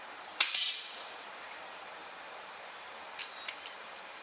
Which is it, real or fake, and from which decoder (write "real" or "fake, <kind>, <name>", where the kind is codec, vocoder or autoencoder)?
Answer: fake, vocoder, BigVGAN v2